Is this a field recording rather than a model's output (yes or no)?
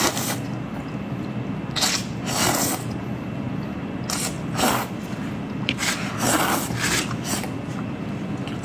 no